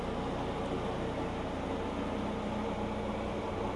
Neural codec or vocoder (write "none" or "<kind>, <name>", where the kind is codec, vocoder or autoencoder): none